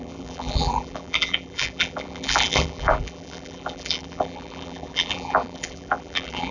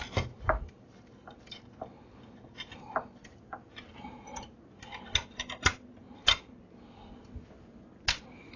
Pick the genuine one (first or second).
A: second